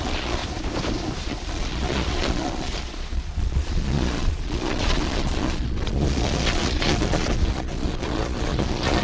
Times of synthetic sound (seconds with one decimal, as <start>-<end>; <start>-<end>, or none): 0.0-0.4; 1.2-9.0